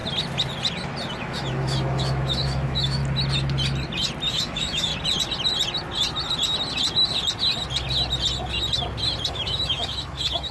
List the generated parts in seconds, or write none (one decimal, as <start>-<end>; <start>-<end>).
1.2-3.0; 4.3-4.9; 9.3-10.5